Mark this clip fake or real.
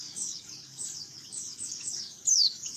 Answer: fake